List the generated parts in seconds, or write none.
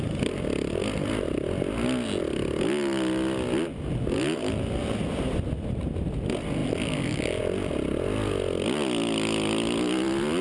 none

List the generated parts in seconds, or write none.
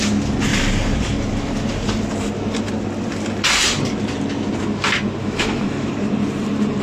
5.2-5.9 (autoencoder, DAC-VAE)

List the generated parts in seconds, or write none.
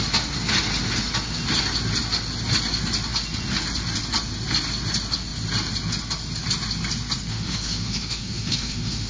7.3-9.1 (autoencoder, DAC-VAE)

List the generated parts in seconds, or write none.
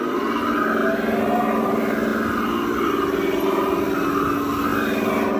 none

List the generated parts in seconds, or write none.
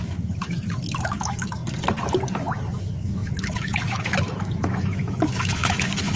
0.0-1.6 (autoencoder, DAC-VAE); 2.8-6.2